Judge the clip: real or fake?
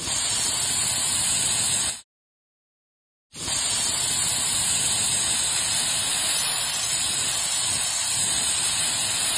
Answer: real